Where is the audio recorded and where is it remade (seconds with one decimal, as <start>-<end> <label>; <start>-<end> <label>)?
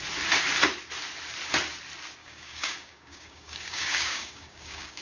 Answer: 0.0-2.2 recorded; 2.2-5.0 remade